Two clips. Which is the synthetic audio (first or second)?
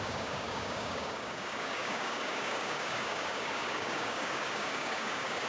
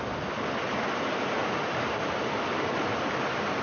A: first